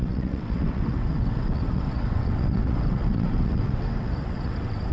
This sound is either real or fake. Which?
fake